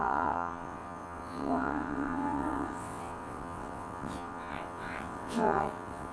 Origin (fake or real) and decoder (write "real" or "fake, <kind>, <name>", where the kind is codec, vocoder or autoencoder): fake, vocoder, WaveNeXt